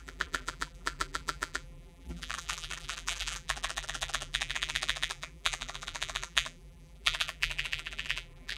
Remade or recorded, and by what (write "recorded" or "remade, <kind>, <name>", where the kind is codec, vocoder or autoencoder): remade, vocoder, BigVGAN v2